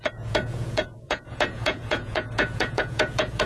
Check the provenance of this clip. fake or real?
fake